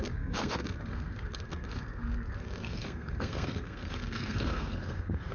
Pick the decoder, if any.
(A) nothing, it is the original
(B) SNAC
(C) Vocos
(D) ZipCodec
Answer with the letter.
B